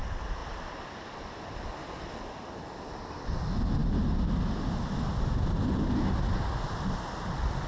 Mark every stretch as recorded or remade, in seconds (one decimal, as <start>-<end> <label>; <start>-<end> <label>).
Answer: 0.0-7.7 recorded